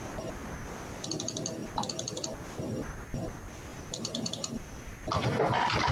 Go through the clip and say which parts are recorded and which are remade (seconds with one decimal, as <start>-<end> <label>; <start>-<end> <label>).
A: 0.0-3.7 recorded; 3.7-4.9 remade; 4.9-5.9 recorded